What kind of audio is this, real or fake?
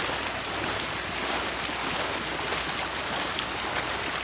real